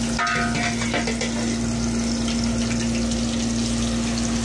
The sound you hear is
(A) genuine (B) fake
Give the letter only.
A